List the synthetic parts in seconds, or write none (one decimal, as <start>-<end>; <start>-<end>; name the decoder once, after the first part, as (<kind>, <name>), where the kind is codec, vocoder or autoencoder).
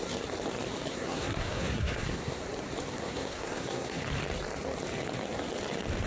0.9-2.4 (codec, SNAC); 2.9-4.0